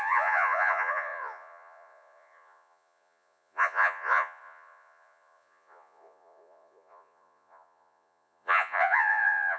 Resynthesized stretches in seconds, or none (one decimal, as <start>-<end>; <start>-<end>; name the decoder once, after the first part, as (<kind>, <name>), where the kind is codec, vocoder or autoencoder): 0.0-9.6 (vocoder, Vocos)